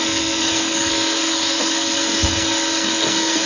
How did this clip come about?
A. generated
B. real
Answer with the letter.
A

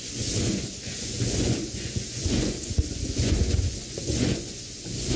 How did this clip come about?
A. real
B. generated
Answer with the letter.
B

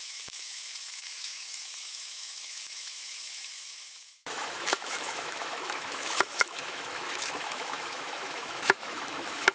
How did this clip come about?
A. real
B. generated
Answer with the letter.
B